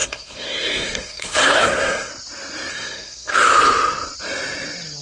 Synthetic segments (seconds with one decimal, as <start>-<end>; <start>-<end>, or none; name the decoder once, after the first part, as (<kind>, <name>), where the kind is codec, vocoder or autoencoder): 0.0-2.1 (codec, SNAC); 2.7-3.3